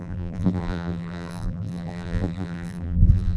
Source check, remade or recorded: remade